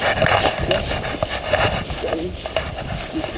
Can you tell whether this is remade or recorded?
recorded